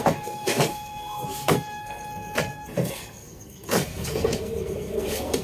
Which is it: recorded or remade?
remade